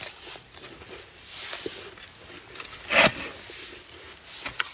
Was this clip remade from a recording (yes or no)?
no